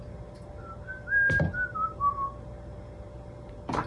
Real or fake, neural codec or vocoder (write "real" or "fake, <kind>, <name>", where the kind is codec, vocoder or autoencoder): real